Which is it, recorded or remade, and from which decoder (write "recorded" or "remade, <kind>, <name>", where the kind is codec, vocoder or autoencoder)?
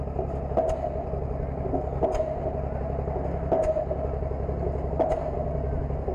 recorded